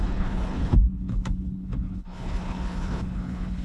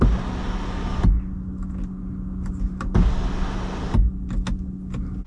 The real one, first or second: second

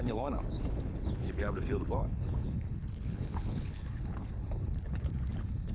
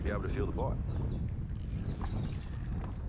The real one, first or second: second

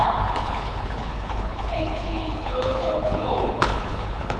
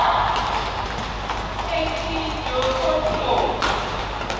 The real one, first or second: second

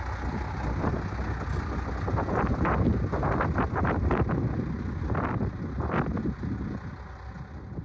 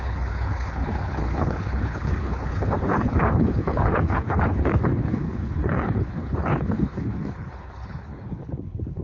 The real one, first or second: first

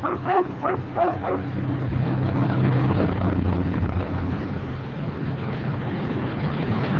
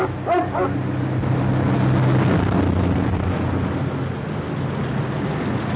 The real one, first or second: second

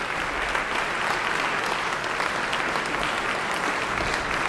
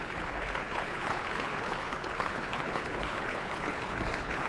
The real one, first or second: first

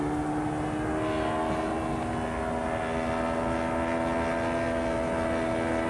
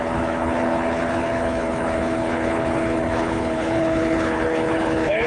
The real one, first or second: first